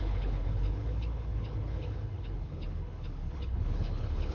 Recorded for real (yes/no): no